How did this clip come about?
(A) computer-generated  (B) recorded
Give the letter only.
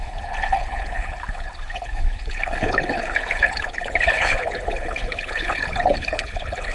A